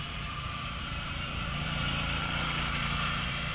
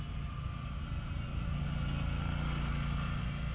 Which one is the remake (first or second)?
first